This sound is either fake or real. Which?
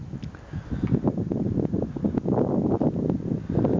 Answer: real